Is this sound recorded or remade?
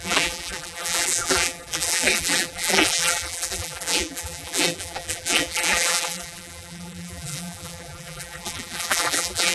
remade